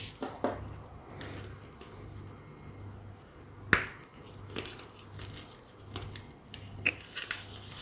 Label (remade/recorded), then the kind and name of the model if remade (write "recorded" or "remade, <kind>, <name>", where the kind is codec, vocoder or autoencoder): recorded